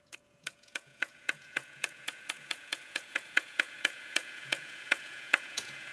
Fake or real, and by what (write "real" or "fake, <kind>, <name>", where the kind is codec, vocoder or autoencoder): fake, vocoder, Vocos